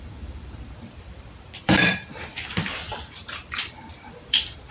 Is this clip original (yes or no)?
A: no